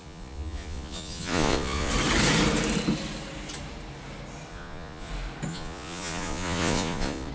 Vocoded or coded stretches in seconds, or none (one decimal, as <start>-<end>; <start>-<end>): 0.0-1.9; 4.5-5.1; 5.5-7.3

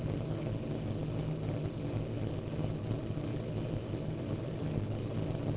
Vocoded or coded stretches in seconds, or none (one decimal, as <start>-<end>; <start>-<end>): none

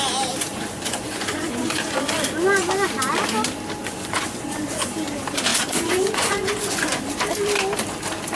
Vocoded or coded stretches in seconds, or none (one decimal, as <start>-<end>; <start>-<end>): 0.5-2.0; 3.8-4.9; 5.5-7.0

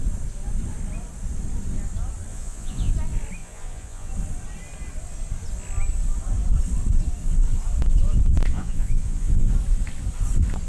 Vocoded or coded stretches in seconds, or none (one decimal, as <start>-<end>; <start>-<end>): 2.3-2.9; 3.4-4.1; 8.5-9.5

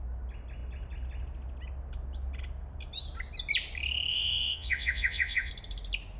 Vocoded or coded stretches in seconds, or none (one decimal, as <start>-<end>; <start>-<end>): 4.1-5.5

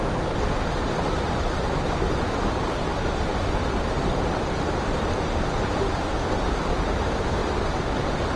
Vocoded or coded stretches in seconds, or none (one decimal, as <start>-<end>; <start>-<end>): none